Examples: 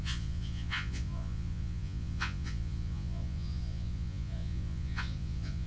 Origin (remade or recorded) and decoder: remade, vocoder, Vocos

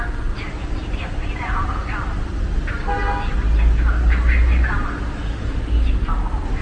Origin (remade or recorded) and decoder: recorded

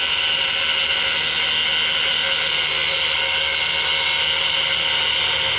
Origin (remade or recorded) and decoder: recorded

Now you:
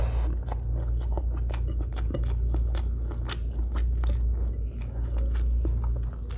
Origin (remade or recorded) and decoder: recorded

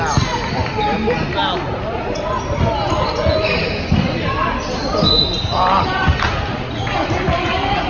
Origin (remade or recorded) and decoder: recorded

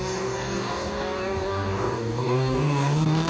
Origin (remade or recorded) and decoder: remade, codec, DAC